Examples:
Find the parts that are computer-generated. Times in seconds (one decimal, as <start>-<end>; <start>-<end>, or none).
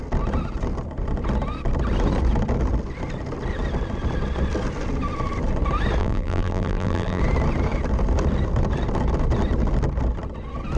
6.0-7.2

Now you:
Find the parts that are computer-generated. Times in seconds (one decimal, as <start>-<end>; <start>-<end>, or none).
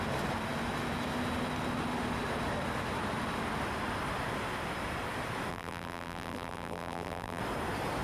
5.5-7.4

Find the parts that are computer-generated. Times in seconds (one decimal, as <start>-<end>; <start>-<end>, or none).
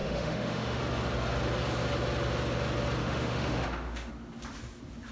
0.0-0.8; 3.0-4.1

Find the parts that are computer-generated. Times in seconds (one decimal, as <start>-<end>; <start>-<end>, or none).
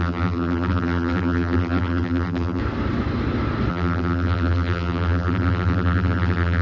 0.0-2.6; 3.7-6.6